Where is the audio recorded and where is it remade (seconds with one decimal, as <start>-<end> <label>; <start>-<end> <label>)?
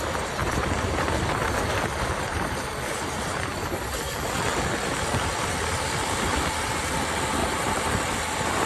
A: 0.0-0.4 recorded; 0.4-4.3 remade; 4.3-7.4 recorded; 7.4-8.0 remade; 8.0-8.7 recorded